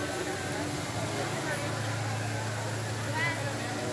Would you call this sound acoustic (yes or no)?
yes